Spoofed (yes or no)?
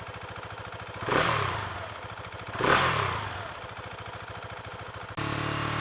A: no